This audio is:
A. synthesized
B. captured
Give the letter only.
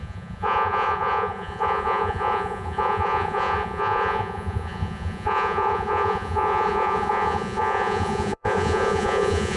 A